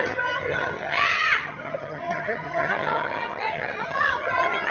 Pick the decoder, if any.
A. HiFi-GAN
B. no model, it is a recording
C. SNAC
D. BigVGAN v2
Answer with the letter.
A